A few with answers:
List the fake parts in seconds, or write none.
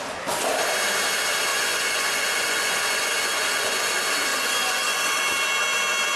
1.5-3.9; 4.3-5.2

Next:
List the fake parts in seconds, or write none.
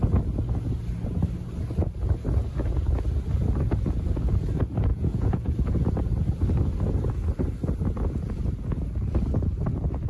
4.9-5.5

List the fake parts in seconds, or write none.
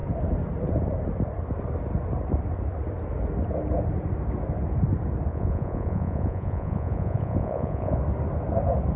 5.3-8.0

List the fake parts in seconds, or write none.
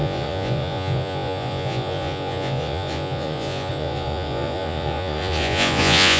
0.0-6.2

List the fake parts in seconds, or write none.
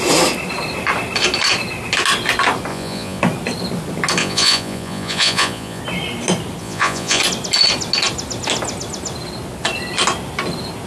2.7-3.2; 4.2-5.8; 6.6-7.2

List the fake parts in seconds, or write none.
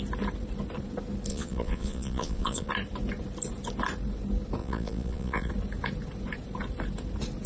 1.3-2.7; 4.6-5.5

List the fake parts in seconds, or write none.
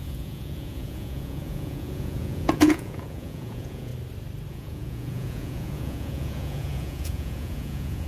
0.0-3.9; 4.5-8.1